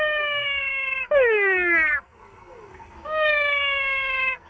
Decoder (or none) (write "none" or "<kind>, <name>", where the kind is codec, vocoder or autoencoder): codec, SNAC